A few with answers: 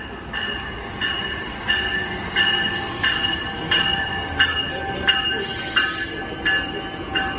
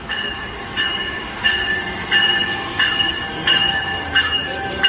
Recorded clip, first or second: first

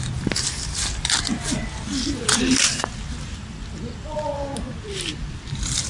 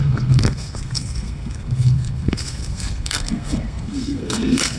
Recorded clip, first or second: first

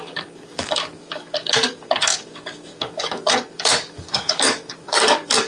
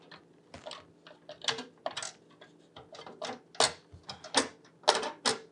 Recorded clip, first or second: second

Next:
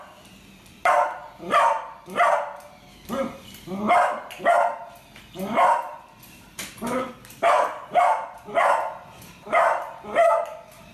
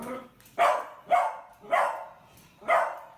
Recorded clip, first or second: second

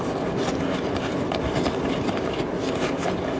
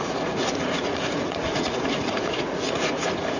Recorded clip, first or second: first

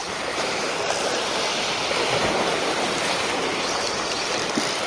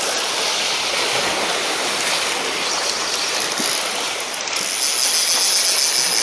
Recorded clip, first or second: second